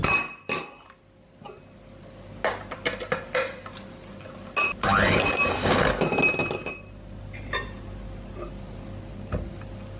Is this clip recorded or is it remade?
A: recorded